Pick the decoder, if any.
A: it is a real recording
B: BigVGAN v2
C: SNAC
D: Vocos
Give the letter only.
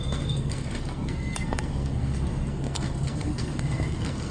C